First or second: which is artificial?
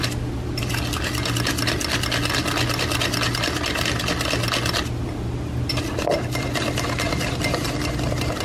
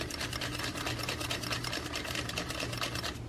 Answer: second